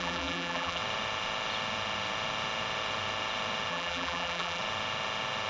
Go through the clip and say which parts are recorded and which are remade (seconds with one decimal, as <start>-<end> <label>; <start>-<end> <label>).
0.0-0.8 remade; 0.8-3.7 recorded; 3.7-4.6 remade; 4.6-5.5 recorded